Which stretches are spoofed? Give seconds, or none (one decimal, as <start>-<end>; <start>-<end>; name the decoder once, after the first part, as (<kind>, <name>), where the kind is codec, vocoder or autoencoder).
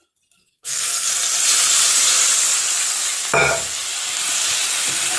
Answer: 0.4-1.1 (codec, SNAC)